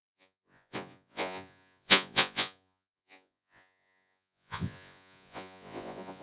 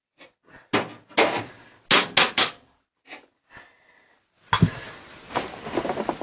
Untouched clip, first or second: second